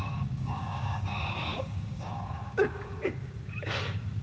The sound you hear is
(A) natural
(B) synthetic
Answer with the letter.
B